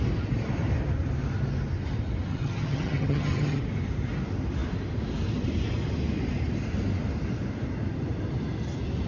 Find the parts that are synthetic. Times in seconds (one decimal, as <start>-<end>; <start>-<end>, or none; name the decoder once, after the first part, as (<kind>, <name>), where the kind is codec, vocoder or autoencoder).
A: 2.3-3.6 (vocoder, HiFi-GAN)